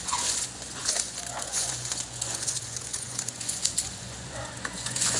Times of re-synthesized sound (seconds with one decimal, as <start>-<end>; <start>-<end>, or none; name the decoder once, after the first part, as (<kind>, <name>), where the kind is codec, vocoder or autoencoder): 0.0-5.2 (vocoder, Vocos)